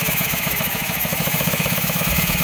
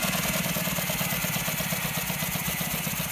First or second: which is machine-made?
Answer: first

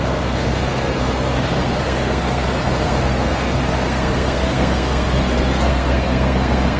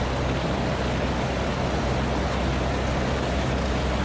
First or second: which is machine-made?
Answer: first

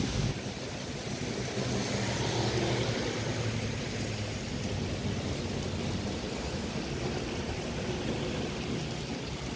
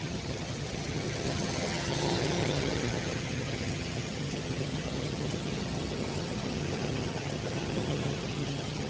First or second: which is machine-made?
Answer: second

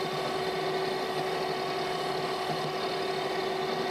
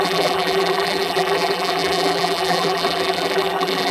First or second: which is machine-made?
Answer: second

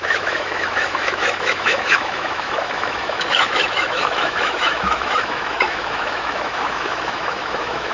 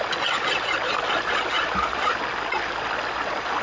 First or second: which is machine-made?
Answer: first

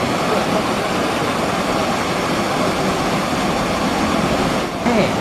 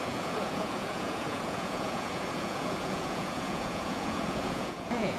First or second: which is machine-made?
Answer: second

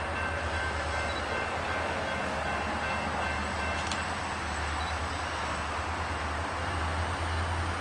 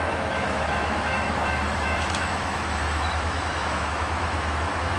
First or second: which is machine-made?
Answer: second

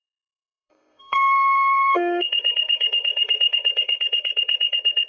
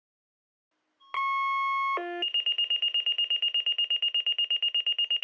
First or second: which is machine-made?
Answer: first